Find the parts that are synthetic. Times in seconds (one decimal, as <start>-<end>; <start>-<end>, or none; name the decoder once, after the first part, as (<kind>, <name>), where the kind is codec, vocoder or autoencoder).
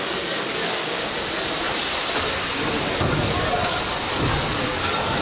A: 0.0-1.0 (codec, DAC); 4.1-5.2